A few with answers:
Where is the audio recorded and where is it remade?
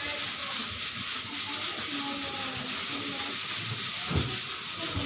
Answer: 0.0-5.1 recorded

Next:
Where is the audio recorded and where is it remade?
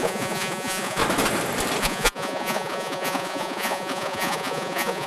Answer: 0.0-1.0 remade; 1.0-1.8 recorded; 1.8-5.1 remade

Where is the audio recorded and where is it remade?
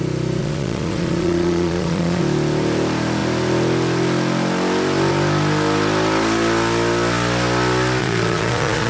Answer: 0.0-0.4 recorded; 0.4-2.2 remade; 2.2-8.0 recorded; 8.0-8.9 remade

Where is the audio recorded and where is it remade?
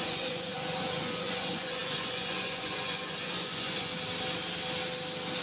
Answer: 0.0-3.9 remade; 3.9-5.4 recorded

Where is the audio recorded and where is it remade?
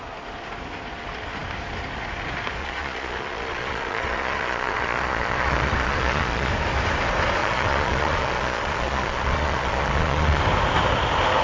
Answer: 0.0-2.6 recorded; 2.6-6.5 remade; 6.5-7.4 recorded; 7.4-10.4 remade; 10.4-11.4 recorded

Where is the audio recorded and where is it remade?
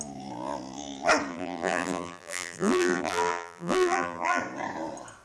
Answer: 0.0-1.3 recorded; 1.3-4.4 remade; 4.4-5.2 recorded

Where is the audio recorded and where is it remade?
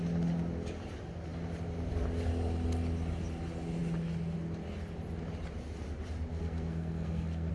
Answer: 0.0-6.3 recorded; 6.3-7.5 remade